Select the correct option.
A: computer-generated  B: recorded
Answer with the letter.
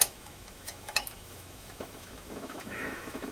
A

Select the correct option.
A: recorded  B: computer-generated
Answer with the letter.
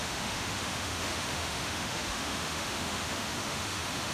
B